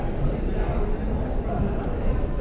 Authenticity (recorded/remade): recorded